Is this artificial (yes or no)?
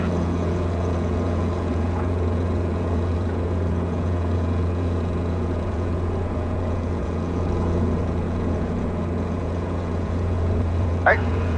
yes